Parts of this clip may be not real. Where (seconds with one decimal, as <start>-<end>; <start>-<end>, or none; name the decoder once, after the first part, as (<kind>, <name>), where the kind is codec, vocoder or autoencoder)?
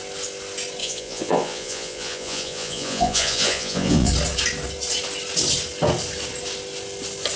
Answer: 0.8-4.1 (vocoder, Vocos)